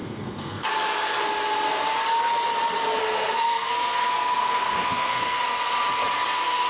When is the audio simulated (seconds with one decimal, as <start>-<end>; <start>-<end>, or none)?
0.0-0.7; 3.0-5.4